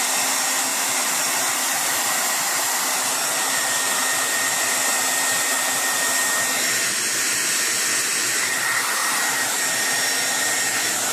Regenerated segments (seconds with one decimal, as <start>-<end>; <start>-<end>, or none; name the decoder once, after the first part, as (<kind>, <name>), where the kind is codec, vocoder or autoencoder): 0.7-2.8 (vocoder, BigVGAN v2); 9.0-9.6